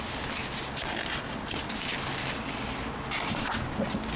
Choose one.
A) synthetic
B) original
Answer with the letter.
B